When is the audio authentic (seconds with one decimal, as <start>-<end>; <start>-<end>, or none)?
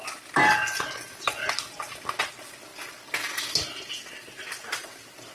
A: 0.0-5.3